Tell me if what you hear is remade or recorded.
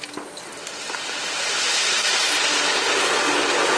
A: recorded